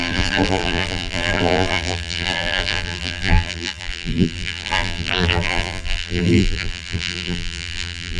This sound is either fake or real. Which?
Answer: fake